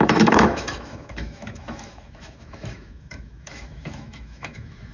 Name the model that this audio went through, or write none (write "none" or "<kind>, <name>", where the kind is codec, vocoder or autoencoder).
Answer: autoencoder, DAC-VAE